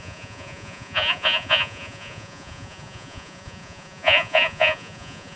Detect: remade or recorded remade